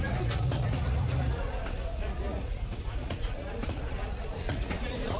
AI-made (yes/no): yes